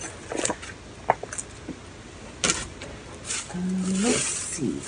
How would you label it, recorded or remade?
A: recorded